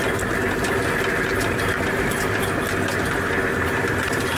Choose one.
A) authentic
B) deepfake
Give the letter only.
A